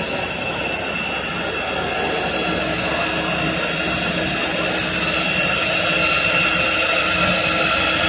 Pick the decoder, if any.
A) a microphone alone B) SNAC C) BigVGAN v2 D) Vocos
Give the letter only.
A